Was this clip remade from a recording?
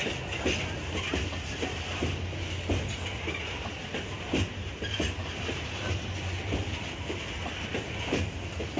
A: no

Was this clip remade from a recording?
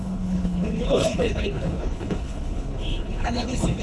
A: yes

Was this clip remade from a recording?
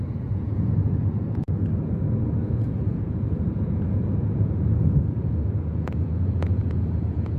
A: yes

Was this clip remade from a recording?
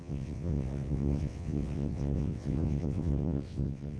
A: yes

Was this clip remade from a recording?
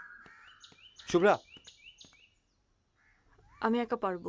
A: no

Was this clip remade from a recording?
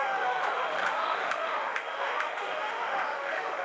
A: yes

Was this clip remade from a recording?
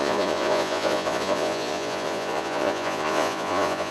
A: yes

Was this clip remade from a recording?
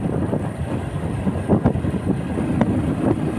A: no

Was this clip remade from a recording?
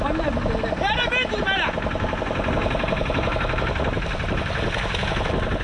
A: no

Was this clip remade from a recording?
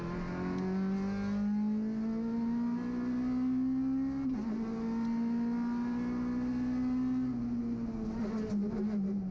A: no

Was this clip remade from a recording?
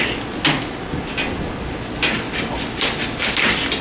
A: no